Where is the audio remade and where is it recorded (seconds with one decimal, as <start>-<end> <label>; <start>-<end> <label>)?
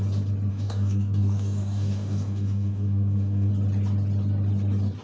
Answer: 0.0-0.5 recorded; 0.5-3.5 remade; 3.5-5.0 recorded